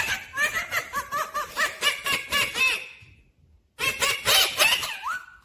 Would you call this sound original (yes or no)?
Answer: yes